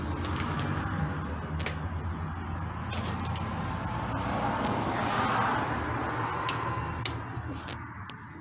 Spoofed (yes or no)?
no